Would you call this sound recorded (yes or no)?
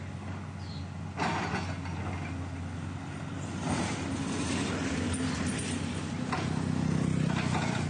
yes